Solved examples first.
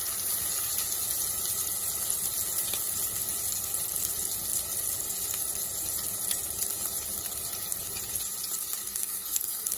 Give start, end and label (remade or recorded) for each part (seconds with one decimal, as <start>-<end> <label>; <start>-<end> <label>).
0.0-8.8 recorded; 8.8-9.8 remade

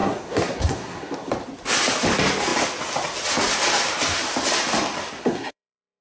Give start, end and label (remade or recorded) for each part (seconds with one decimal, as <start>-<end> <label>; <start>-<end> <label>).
0.0-1.3 remade; 1.3-5.2 recorded; 5.2-6.0 remade

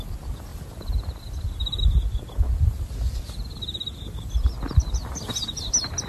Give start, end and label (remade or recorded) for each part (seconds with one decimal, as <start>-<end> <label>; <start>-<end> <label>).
0.0-6.1 recorded

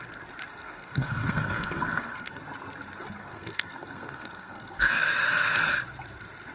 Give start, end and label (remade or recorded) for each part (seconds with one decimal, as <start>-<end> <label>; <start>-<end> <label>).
0.0-0.5 recorded; 0.5-2.4 remade; 2.4-3.2 recorded; 3.2-5.7 remade; 5.7-6.5 recorded

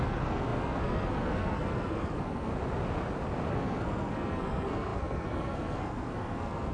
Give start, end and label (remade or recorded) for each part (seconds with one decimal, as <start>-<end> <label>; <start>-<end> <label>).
0.0-2.5 remade; 2.5-3.5 recorded; 3.5-6.7 remade